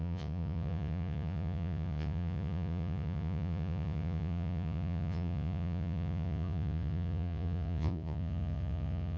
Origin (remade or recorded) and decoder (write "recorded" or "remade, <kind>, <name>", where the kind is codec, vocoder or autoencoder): remade, vocoder, Vocos